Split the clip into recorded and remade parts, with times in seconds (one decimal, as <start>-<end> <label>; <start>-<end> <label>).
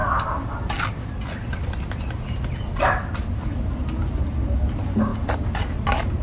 0.0-6.2 recorded